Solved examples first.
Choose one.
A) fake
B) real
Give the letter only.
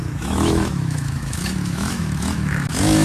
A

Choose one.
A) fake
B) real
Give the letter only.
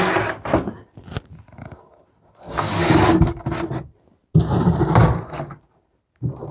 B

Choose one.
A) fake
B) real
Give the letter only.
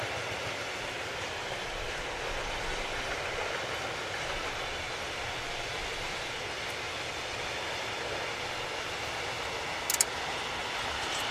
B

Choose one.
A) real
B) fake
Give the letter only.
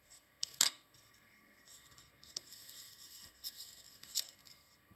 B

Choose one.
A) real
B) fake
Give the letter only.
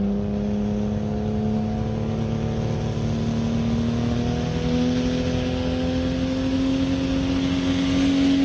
A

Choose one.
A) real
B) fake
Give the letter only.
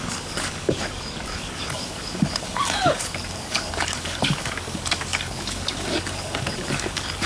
B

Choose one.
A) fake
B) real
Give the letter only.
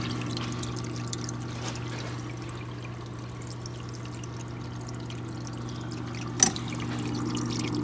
B